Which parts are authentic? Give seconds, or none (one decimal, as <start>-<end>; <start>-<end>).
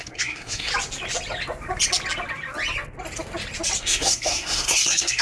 0.7-3.8